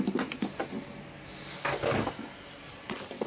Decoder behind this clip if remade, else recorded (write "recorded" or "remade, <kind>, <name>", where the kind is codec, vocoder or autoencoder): recorded